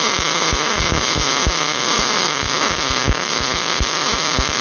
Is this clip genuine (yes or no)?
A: no